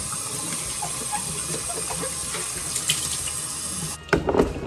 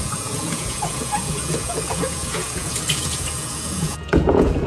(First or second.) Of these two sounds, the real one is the first